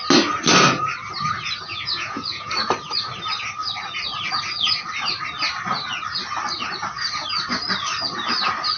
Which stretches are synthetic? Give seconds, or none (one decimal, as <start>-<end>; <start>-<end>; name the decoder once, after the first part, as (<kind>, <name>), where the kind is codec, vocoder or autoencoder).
1.7-2.5 (vocoder, Vocos)